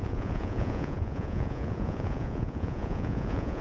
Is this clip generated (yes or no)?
yes